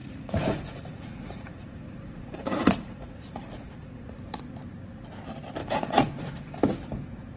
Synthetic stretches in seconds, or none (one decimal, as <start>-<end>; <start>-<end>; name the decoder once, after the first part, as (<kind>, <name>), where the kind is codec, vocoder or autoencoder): 0.0-4.4 (vocoder, Vocos); 5.6-6.6